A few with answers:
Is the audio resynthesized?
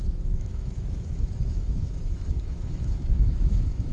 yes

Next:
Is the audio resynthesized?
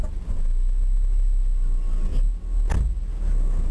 no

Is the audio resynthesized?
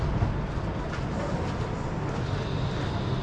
no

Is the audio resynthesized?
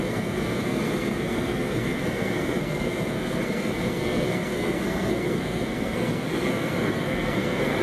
yes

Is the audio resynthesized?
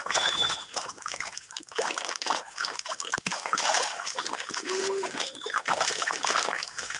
yes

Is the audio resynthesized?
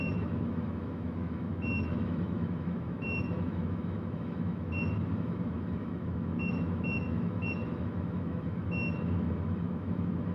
yes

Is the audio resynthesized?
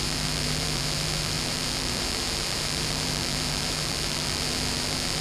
yes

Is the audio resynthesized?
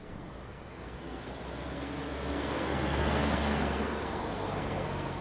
yes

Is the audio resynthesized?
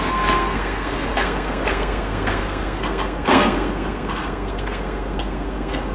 yes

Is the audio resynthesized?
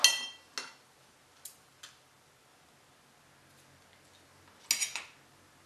no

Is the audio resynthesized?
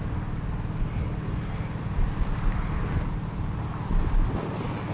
no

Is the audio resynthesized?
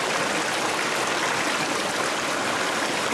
no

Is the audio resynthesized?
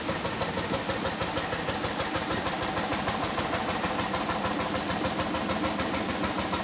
no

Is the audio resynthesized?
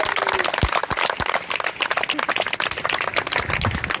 no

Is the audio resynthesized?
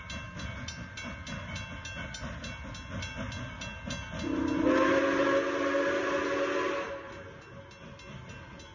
no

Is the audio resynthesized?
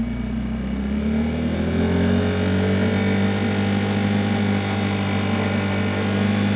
no